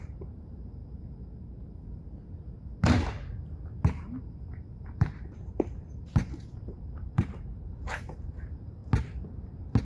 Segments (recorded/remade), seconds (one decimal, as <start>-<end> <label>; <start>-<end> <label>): 0.0-0.8 remade; 0.8-4.8 recorded; 4.8-8.8 remade; 8.8-9.8 recorded